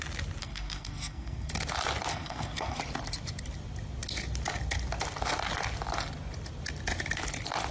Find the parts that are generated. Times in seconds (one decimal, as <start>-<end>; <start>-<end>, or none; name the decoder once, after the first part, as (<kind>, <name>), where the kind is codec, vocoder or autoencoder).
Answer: 0.4-1.5 (codec, SNAC); 2.1-2.8